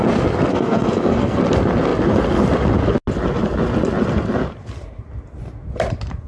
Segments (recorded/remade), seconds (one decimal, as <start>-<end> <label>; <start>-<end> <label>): 0.0-0.5 recorded; 0.5-1.4 remade; 1.4-6.3 recorded